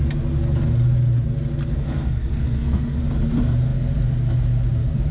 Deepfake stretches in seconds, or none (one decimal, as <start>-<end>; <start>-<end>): 1.7-3.0